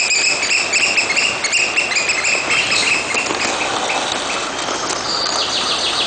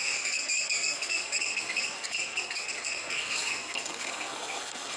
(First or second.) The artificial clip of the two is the second